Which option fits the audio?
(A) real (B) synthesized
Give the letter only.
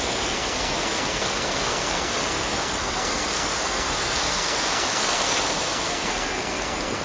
B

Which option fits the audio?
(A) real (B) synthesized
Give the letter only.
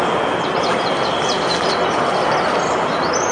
A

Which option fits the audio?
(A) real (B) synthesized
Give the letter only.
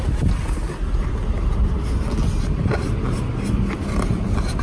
A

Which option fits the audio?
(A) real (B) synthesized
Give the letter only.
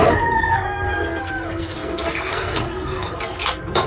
B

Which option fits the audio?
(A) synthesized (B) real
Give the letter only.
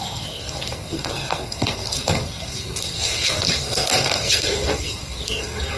A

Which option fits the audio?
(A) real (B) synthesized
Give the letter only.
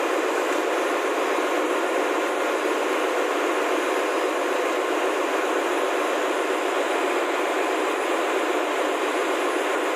A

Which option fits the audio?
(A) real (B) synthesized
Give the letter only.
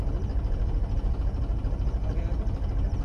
A